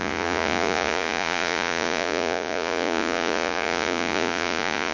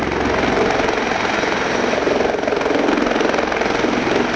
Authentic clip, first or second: second